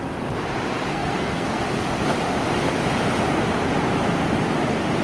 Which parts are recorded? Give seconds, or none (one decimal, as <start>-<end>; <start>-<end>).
0.0-0.9; 1.6-5.0